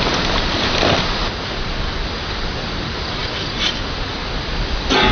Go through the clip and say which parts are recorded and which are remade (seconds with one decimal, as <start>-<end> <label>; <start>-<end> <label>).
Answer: 0.0-5.1 recorded